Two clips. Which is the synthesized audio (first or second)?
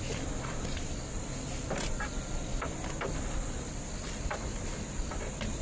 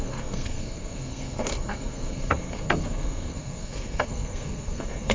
second